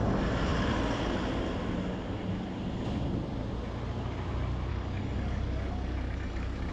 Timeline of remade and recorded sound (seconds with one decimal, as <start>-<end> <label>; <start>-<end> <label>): 0.0-4.7 recorded; 4.7-6.7 remade